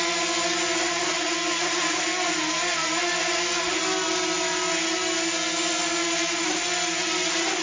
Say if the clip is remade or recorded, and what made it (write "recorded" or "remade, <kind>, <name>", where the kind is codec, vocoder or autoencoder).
recorded